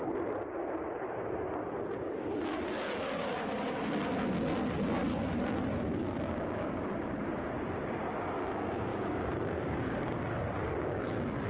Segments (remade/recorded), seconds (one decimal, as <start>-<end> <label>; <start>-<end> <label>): 0.0-5.9 recorded; 5.9-6.8 remade; 6.8-8.9 recorded; 8.9-10.2 remade; 10.2-11.5 recorded